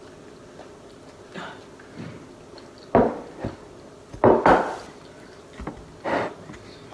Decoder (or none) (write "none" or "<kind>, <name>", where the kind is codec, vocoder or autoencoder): none